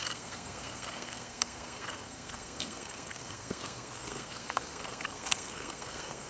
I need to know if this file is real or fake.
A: fake